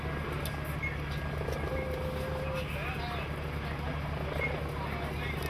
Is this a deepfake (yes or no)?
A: no